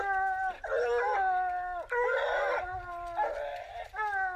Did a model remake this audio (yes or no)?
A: no